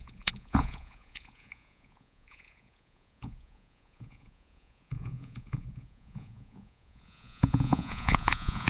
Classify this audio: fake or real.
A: fake